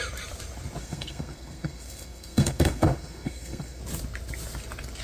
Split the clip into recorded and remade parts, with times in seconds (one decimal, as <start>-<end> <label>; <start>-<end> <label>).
0.0-0.8 recorded; 0.8-3.8 remade; 3.8-5.0 recorded